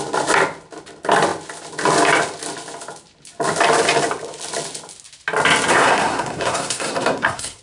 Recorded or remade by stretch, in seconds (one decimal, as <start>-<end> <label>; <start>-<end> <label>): 0.0-5.7 recorded; 5.7-7.6 remade